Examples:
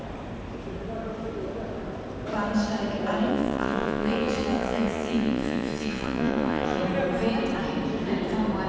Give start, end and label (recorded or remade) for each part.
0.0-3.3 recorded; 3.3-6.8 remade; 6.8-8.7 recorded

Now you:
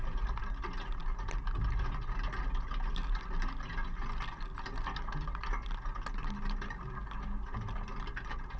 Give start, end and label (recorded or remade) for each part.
0.0-8.6 recorded

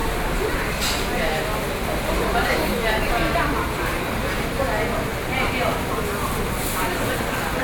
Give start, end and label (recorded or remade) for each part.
0.0-7.6 recorded

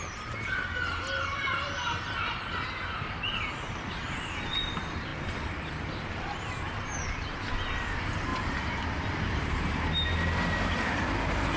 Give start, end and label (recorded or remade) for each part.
0.0-11.6 recorded